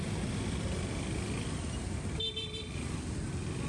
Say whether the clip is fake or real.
real